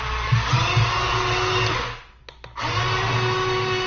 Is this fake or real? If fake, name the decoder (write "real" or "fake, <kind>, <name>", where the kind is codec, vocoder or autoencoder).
real